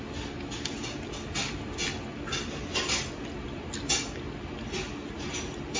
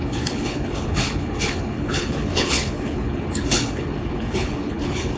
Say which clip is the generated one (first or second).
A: second